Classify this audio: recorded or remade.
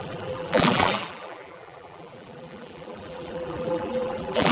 remade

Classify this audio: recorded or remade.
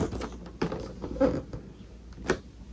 recorded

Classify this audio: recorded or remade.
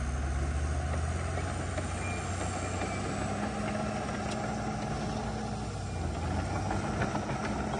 recorded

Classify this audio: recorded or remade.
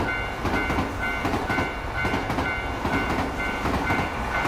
remade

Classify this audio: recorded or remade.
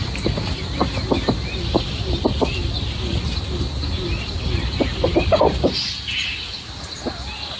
recorded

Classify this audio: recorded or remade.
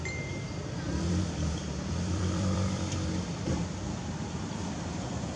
remade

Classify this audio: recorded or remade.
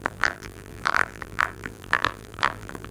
remade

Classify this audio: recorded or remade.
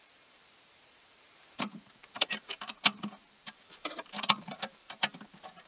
remade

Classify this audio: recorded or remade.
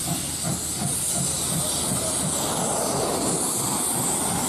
recorded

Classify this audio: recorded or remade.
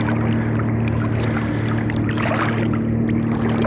recorded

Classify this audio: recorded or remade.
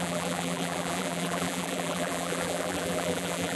remade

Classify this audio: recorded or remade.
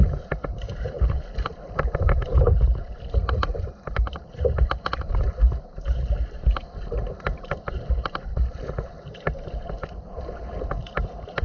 remade